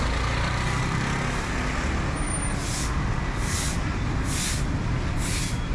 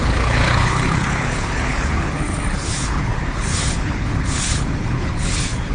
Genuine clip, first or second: first